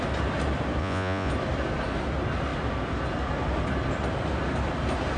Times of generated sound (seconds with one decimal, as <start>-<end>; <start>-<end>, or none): 0.8-1.3

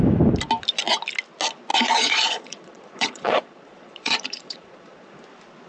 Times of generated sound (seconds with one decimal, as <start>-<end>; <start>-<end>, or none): 1.7-5.1

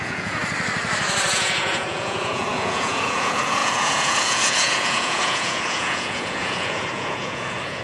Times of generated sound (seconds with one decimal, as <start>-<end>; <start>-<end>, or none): 0.0-0.4; 1.3-7.8

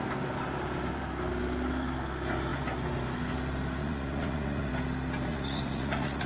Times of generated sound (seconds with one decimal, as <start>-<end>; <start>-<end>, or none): 3.8-4.7; 5.3-6.3

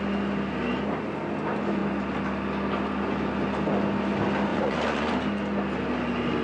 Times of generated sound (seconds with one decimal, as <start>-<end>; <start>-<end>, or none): 4.5-5.1

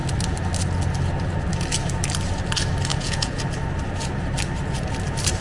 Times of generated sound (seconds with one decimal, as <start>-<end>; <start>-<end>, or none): 2.9-3.4

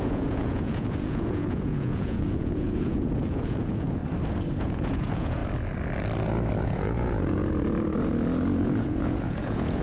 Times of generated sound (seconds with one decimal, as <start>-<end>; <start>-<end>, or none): 0.0-4.0; 4.6-5.4; 6.6-7.4; 8.6-9.8